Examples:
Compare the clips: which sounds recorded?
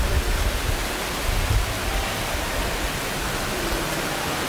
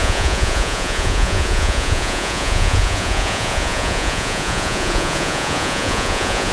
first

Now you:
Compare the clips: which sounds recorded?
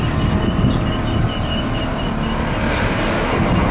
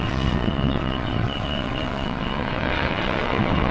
first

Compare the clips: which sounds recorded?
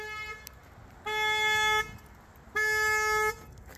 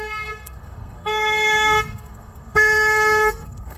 first